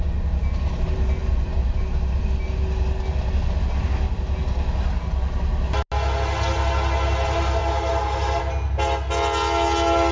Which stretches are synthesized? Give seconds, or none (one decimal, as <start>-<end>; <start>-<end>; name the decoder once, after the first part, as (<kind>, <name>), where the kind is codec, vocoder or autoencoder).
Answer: 7.6-8.4 (vocoder, BigVGAN v2)